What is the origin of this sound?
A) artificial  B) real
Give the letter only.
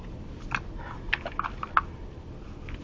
B